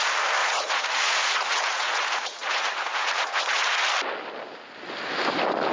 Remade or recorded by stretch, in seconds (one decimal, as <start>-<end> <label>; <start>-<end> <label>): 0.0-0.4 recorded; 0.4-3.8 remade; 3.8-5.7 recorded